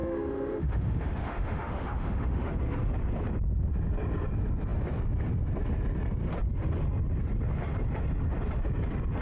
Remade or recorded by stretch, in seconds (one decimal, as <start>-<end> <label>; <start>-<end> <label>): 0.0-2.5 remade; 2.5-9.2 recorded